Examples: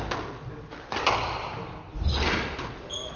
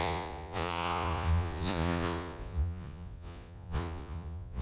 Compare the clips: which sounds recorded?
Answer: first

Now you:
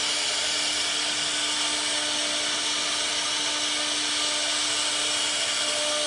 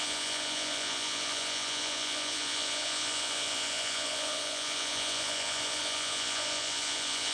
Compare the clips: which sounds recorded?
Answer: first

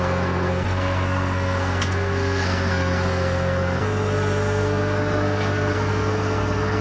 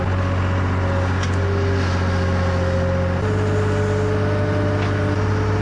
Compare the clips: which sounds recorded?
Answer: second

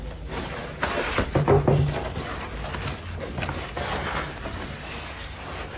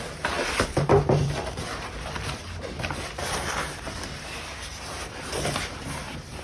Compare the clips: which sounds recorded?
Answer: first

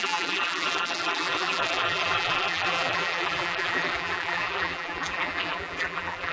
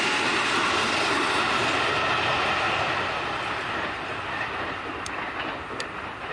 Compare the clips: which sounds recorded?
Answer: second